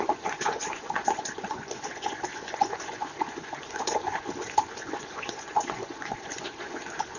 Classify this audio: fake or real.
fake